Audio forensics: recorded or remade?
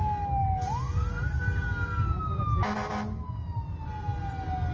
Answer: recorded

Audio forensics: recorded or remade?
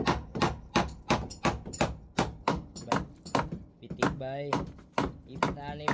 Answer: recorded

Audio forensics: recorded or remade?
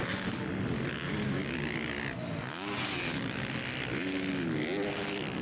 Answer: recorded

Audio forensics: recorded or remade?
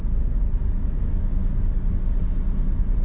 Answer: recorded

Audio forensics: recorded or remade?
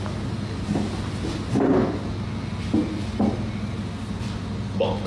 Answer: recorded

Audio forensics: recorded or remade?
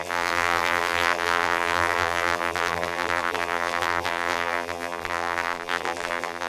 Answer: remade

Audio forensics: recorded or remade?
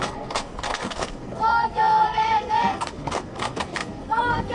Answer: remade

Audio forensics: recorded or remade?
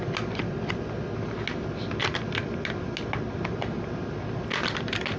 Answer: recorded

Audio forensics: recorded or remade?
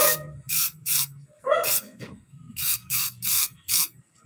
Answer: remade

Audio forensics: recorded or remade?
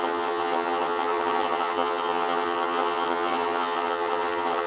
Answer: remade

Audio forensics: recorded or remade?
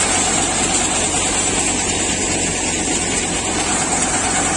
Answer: recorded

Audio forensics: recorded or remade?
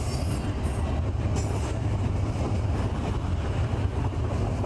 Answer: recorded